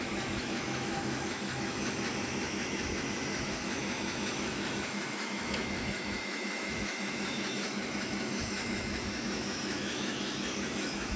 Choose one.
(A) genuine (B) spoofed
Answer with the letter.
B